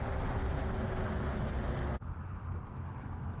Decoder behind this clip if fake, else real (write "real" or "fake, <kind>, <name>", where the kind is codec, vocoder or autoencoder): real